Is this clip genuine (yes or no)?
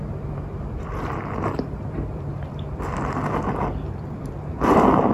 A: no